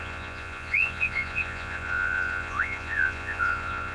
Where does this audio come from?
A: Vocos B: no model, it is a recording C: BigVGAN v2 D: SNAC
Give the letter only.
A